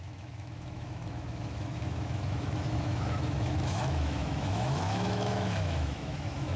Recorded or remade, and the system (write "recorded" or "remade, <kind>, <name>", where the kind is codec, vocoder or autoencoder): remade, autoencoder, DAC-VAE